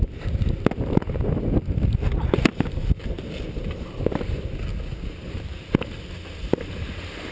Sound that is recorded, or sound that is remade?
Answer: recorded